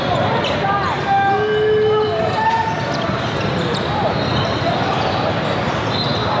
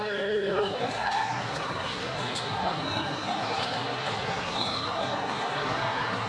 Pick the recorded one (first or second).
first